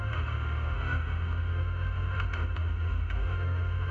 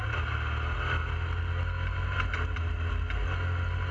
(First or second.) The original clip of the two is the second